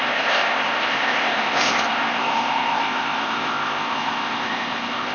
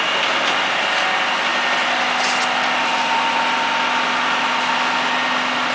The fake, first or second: first